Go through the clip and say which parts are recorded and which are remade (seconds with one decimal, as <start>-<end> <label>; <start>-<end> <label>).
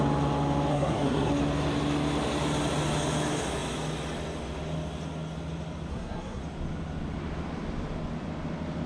0.0-0.7 recorded; 0.7-1.3 remade; 1.3-5.9 recorded; 5.9-6.4 remade; 6.4-8.9 recorded